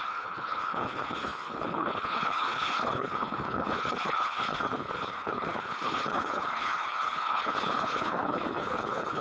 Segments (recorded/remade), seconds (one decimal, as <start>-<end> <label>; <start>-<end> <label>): 0.0-9.2 remade